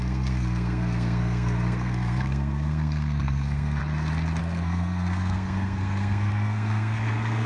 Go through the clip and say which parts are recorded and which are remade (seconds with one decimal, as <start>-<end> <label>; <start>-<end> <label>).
0.0-3.8 remade; 3.8-4.4 recorded; 4.4-7.5 remade